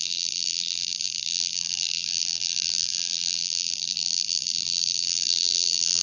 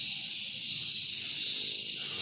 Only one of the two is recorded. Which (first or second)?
second